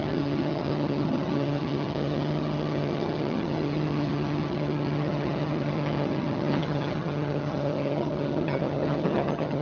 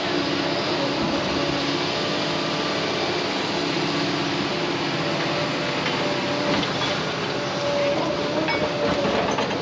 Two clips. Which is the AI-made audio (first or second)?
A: first